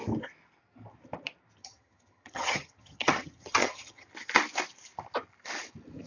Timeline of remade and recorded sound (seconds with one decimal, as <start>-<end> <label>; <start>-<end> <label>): 0.0-1.6 recorded; 1.6-4.1 remade; 4.1-6.1 recorded